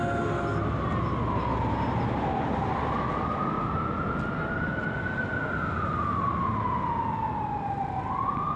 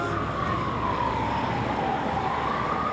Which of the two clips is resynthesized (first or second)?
second